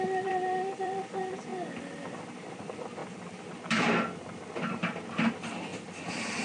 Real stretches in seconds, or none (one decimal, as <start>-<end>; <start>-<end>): 5.7-6.4